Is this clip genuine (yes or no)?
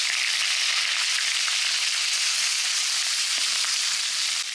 yes